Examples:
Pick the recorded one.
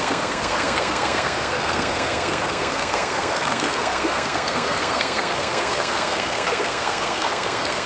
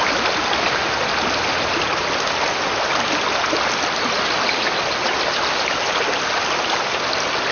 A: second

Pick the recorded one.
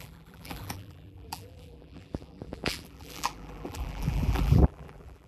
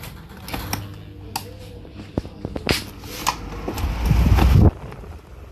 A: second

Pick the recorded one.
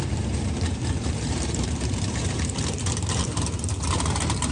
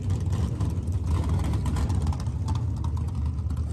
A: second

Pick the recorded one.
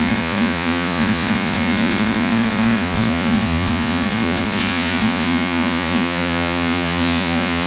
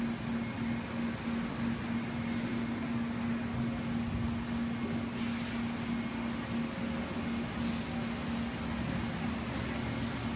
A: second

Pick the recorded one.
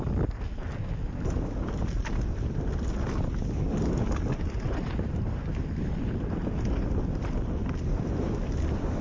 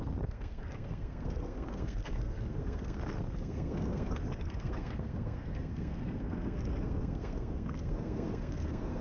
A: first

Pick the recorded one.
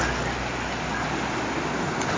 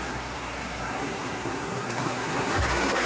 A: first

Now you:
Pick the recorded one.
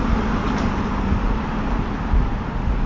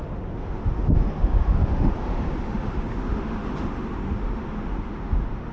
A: first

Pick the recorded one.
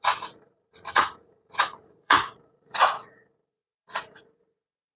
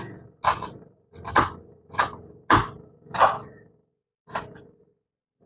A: second